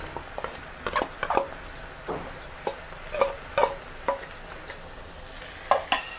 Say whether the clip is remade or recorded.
recorded